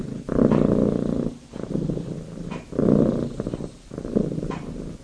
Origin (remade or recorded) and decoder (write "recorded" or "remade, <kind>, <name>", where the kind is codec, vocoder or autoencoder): recorded